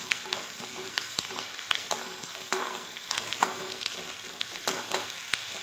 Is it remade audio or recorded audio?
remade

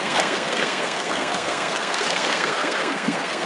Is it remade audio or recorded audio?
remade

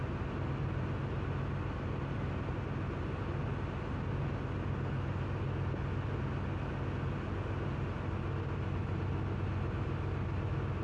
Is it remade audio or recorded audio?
recorded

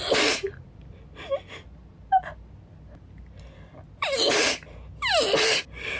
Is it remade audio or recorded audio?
recorded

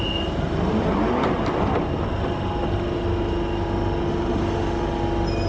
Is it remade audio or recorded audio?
recorded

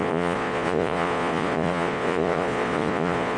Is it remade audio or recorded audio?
remade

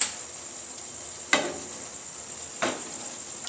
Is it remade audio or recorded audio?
recorded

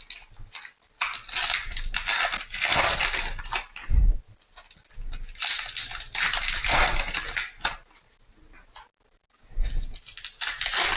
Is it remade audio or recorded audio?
recorded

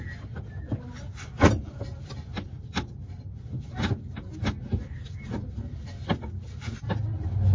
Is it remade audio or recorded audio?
recorded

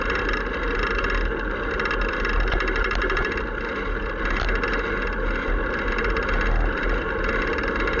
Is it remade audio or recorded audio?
recorded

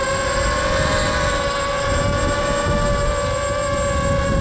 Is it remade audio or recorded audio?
recorded